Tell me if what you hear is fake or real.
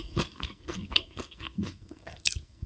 fake